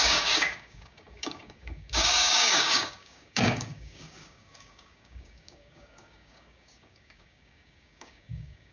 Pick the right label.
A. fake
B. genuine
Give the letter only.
A